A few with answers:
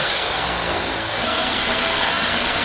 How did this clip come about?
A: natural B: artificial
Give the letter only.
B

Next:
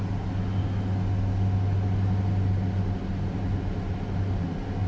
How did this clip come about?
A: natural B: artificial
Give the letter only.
A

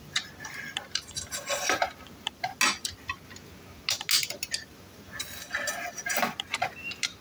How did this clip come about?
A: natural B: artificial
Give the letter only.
A